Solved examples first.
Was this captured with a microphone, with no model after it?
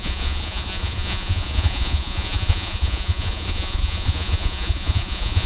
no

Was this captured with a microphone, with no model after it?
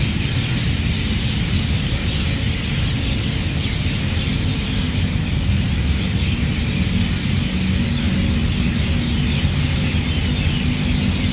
yes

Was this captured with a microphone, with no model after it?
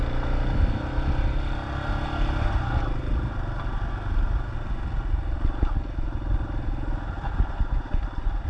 yes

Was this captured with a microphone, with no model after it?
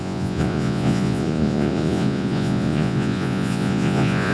no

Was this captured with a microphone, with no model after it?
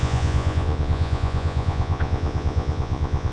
no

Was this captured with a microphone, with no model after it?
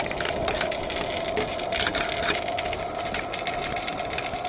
yes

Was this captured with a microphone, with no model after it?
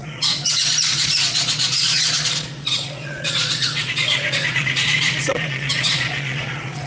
no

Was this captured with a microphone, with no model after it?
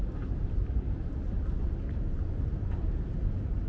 yes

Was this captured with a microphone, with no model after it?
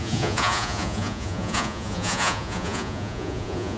no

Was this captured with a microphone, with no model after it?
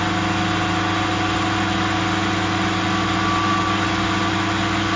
yes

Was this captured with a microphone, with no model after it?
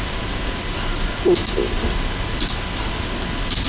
yes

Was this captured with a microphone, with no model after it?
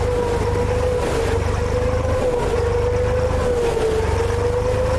yes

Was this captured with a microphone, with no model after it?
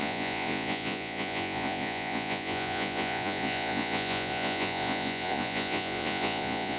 no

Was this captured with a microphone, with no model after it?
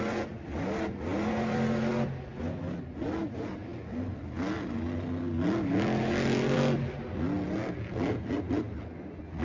yes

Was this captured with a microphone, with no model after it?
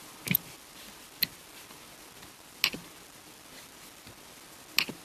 yes